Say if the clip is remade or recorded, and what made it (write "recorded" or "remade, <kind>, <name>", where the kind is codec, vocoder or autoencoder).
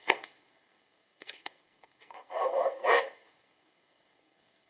remade, codec, SNAC